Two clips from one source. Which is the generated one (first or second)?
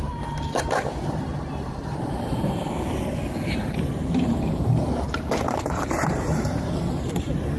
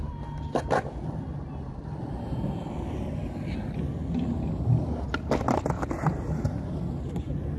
first